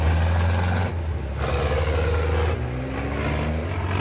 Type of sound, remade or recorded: recorded